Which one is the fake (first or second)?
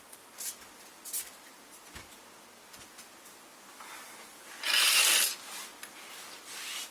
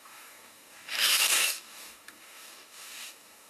second